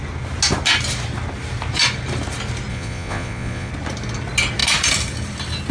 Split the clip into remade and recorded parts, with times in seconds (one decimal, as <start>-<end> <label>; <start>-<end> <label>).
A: 0.0-2.7 recorded; 2.7-3.7 remade; 3.7-5.7 recorded